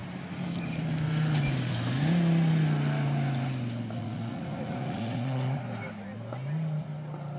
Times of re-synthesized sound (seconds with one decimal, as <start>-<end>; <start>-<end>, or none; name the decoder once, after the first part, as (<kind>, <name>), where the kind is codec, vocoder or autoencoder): 4.0-5.6 (vocoder, Vocos)